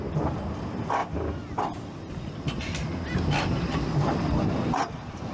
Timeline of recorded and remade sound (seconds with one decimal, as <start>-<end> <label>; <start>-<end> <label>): 0.0-5.3 recorded